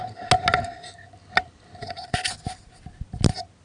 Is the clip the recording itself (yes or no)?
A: yes